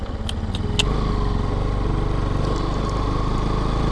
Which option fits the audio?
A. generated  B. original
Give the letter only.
B